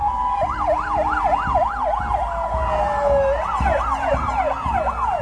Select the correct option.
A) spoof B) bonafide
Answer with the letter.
B